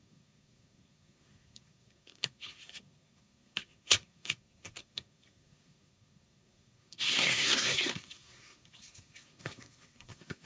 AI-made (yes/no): yes